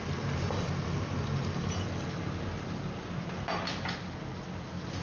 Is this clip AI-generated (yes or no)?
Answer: no